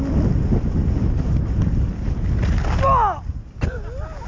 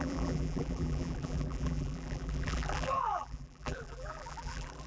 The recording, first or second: first